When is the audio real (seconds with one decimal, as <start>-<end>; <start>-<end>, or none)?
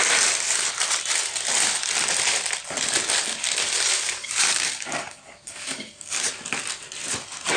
0.0-3.9; 6.3-7.6